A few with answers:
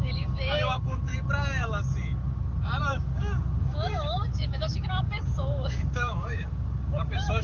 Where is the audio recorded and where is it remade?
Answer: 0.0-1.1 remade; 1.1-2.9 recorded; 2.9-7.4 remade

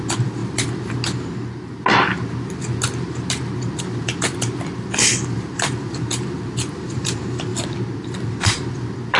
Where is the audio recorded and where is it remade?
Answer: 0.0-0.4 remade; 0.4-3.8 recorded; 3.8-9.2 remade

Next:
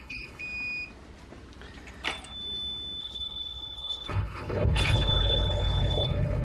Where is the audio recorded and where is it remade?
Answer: 0.0-0.4 remade; 0.4-3.0 recorded; 3.0-6.4 remade